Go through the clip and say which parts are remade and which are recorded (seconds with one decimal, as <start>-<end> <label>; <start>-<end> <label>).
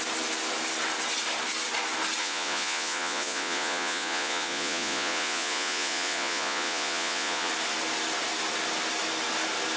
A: 0.0-2.2 recorded; 2.2-7.5 remade; 7.5-9.8 recorded